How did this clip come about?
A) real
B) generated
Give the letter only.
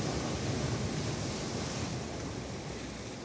A